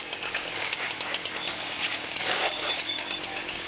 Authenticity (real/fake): fake